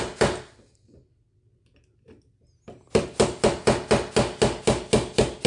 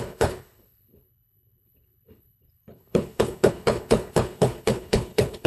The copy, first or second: second